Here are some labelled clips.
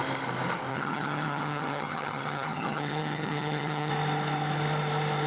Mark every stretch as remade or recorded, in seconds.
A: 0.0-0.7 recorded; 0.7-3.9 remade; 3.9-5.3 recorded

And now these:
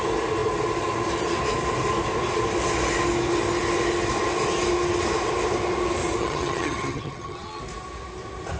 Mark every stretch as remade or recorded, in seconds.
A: 0.0-6.2 recorded; 6.2-7.6 remade; 7.6-8.6 recorded